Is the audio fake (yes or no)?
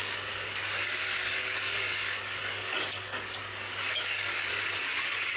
yes